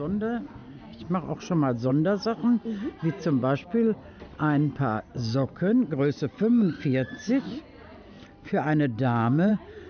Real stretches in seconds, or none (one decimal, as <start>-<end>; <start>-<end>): 0.0-9.9